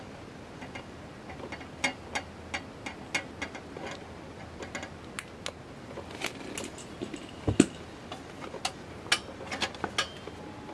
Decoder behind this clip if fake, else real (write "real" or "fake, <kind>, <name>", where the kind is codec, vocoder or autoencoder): real